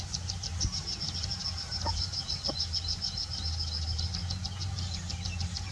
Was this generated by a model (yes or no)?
no